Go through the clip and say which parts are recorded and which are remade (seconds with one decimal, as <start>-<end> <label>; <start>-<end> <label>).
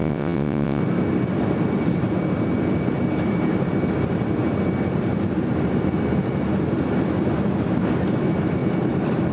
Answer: 0.0-0.8 remade; 0.8-9.3 recorded